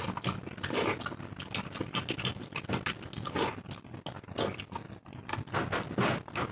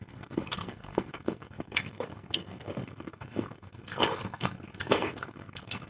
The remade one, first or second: second